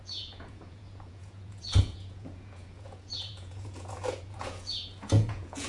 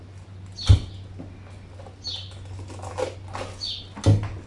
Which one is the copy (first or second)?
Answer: first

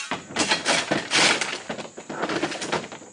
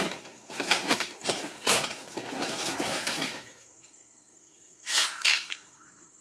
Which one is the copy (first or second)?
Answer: second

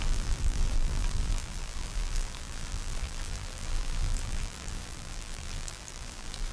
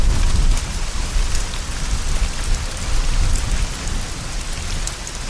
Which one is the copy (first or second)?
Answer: first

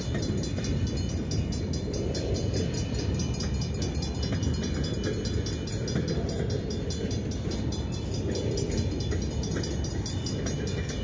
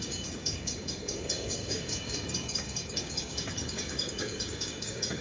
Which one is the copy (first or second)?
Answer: second